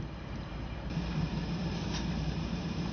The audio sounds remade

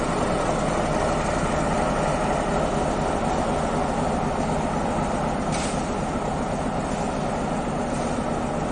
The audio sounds recorded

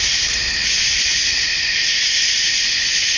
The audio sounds recorded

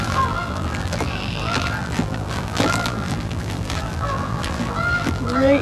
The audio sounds remade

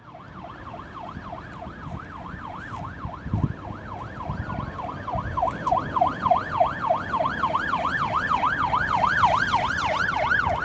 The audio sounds recorded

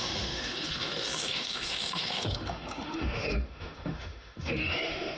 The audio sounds remade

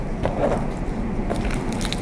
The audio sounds recorded